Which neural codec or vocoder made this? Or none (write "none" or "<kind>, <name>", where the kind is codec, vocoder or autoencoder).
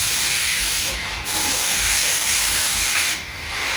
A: codec, DAC